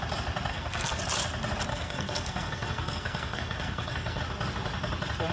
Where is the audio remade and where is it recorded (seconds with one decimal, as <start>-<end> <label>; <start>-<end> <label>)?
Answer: 0.0-0.5 recorded; 0.5-1.0 remade; 1.0-1.7 recorded; 1.7-4.2 remade; 4.2-5.3 recorded